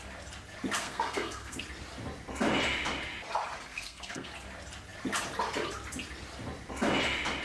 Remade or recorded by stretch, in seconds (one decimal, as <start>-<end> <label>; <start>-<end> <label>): 0.0-0.8 recorded; 0.8-1.6 remade; 1.6-3.7 recorded; 3.7-4.3 remade; 4.3-7.4 recorded